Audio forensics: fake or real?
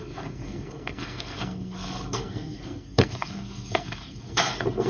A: fake